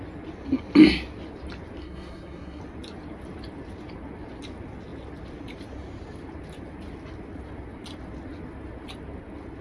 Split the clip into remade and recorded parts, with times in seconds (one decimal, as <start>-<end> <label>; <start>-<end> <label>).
0.0-1.8 recorded; 1.8-2.6 remade; 2.6-9.6 recorded